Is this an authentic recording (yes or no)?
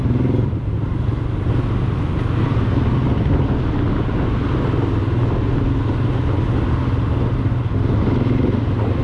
yes